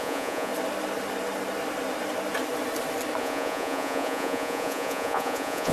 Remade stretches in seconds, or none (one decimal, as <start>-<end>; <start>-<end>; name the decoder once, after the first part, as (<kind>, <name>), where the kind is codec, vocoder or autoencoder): 0.0-0.5 (vocoder, Vocos); 3.2-5.7